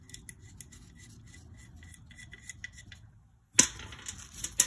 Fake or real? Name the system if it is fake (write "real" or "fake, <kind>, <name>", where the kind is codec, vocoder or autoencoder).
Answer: real